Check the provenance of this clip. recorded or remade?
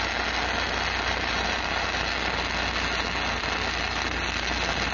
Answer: recorded